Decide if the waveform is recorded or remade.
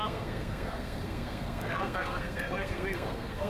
remade